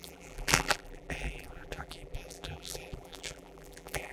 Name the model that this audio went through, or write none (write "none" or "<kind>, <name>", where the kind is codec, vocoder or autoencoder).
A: vocoder, BigVGAN v2